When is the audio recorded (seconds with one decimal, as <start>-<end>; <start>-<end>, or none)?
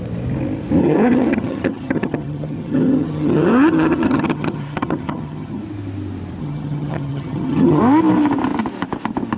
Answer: 0.0-0.8; 5.6-6.4; 7.8-9.4